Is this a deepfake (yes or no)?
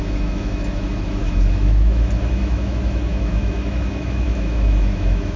yes